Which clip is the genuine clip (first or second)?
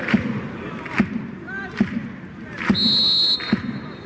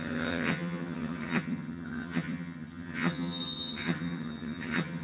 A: first